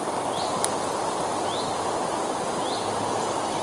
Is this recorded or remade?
recorded